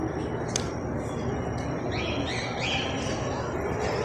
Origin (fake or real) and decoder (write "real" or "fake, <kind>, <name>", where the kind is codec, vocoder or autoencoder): real